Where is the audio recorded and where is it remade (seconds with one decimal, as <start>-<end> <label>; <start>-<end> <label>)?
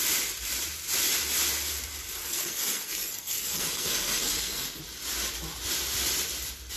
0.0-2.2 recorded; 2.2-4.8 remade; 4.8-6.8 recorded